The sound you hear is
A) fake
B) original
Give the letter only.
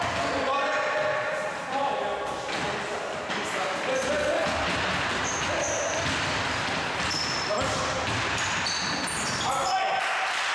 B